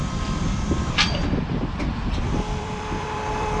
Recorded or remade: remade